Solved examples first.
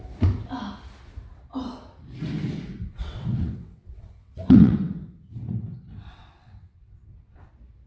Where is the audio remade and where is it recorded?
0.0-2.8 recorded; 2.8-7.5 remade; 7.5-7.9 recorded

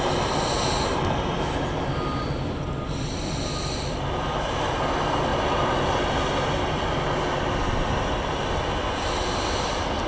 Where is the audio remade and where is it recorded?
0.0-10.1 recorded

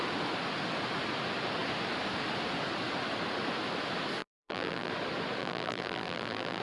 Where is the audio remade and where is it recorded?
0.0-4.2 recorded; 4.2-4.9 remade; 4.9-5.4 recorded; 5.4-6.6 remade

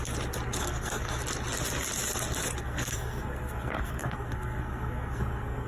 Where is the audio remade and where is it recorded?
0.0-0.6 recorded; 0.6-1.2 remade; 1.2-2.6 recorded; 2.6-5.7 remade

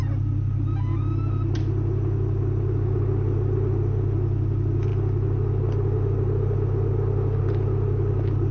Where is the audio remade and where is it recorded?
0.0-8.5 recorded

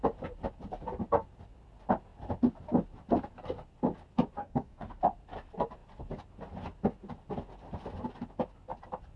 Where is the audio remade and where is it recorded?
0.0-4.4 recorded; 4.4-5.0 remade; 5.0-9.2 recorded

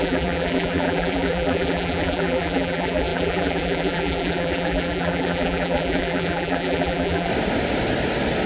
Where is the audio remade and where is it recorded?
0.0-7.3 remade; 7.3-8.5 recorded

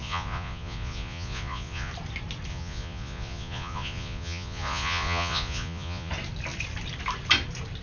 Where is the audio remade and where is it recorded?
0.0-1.9 remade; 1.9-2.5 recorded; 2.5-6.1 remade; 6.1-7.8 recorded